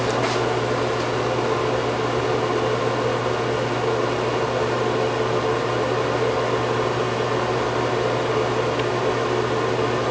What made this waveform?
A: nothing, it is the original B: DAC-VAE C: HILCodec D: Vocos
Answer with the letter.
A